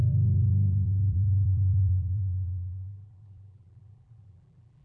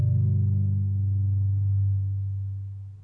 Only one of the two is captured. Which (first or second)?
second